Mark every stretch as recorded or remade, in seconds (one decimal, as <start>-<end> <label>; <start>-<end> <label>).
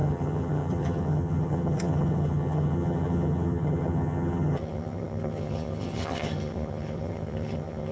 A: 0.0-7.9 remade